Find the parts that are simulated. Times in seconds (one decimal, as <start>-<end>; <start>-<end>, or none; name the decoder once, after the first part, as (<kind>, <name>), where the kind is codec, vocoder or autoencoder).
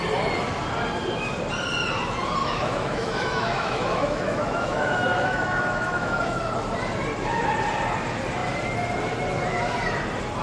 2.4-6.4 (autoencoder, DAC-VAE)